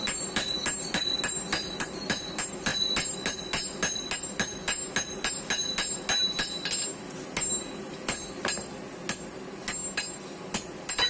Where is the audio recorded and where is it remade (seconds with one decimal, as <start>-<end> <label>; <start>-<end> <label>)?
0.0-11.1 recorded